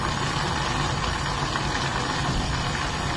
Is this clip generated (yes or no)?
no